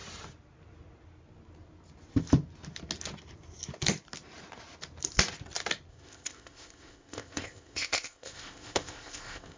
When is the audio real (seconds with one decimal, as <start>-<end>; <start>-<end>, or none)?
0.0-5.9